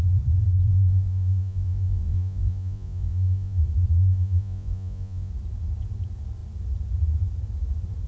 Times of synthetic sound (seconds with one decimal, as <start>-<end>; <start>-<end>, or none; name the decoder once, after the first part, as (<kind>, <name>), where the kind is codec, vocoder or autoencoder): 0.7-3.6 (vocoder, Vocos); 4.0-5.3